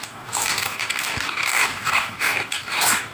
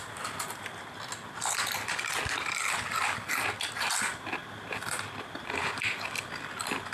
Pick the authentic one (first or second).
second